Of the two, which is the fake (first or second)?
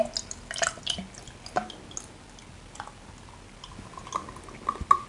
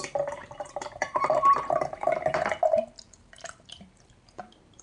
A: second